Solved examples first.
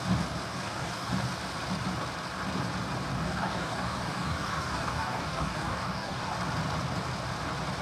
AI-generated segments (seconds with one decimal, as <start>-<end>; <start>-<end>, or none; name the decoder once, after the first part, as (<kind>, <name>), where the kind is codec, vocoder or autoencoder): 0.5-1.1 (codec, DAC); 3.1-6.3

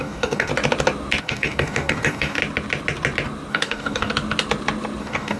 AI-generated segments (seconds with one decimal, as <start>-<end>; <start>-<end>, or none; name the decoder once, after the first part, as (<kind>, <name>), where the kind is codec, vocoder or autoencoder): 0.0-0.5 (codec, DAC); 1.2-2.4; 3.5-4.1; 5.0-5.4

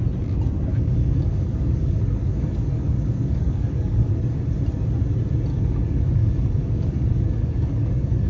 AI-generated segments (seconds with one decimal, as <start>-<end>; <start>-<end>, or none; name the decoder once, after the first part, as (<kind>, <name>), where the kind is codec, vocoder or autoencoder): 0.7-4.4 (codec, DAC); 5.5-8.3

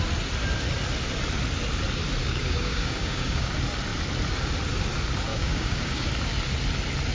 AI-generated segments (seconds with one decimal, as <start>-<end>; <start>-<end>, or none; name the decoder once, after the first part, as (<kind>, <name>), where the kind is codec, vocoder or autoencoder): 2.2-3.5 (codec, DAC); 5.3-6.1

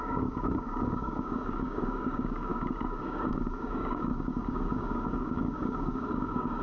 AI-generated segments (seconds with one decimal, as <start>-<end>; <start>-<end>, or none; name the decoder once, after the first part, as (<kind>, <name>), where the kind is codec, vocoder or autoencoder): 0.0-6.6 (codec, DAC)

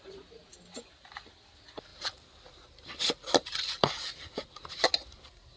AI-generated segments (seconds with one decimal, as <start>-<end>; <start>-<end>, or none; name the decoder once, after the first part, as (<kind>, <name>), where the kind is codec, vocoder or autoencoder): none

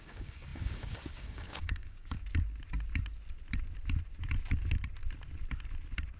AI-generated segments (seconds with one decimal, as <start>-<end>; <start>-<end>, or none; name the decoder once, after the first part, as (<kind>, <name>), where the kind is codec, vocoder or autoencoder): 0.0-2.2 (codec, DAC)